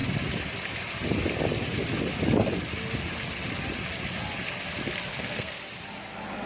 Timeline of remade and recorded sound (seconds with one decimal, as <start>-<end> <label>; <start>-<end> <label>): 0.0-5.1 recorded; 5.1-5.6 remade; 5.6-6.5 recorded